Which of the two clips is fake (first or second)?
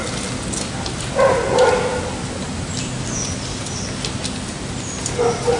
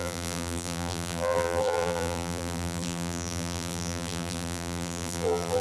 second